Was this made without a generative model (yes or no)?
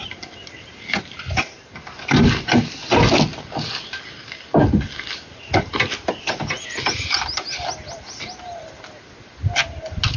yes